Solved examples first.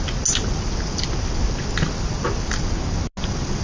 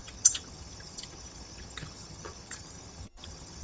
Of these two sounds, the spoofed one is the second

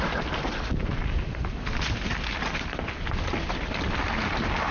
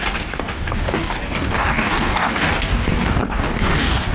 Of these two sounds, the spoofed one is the second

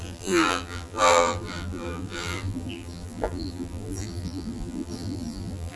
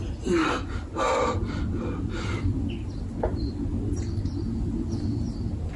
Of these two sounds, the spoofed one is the first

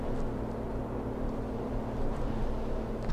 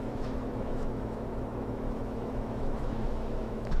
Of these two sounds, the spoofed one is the second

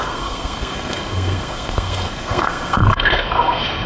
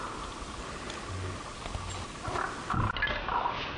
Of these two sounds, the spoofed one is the first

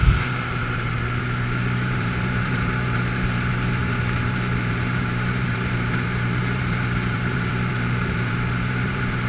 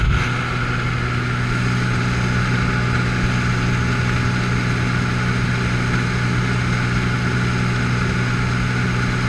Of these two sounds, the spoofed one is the first